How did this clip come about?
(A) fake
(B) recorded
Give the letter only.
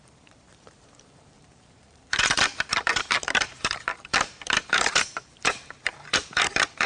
A